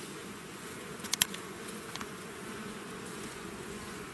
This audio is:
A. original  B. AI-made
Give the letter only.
B